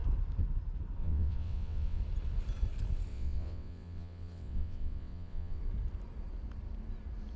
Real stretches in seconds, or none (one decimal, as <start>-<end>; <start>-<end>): 0.0-1.0; 2.0-3.1; 5.6-7.4